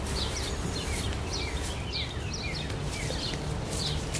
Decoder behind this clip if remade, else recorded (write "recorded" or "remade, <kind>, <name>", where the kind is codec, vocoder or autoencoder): recorded